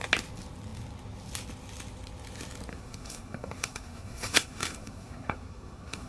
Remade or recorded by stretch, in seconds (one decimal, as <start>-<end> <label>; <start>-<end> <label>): 0.0-2.7 recorded; 2.7-6.1 remade